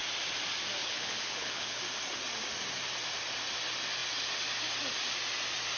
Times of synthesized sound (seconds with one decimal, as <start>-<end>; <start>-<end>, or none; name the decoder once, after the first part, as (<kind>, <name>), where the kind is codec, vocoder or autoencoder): 0.8-1.8 (codec, HILCodec)